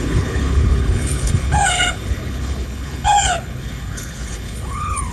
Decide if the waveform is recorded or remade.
remade